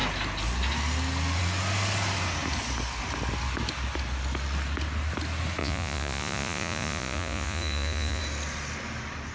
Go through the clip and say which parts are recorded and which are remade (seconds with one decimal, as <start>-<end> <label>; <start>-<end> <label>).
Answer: 0.0-5.6 recorded; 5.6-8.2 remade; 8.2-9.3 recorded